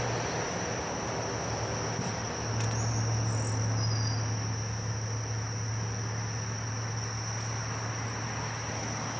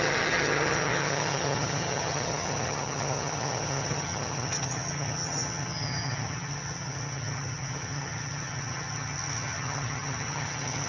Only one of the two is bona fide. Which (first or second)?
first